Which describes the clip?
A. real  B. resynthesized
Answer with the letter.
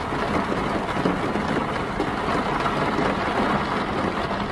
A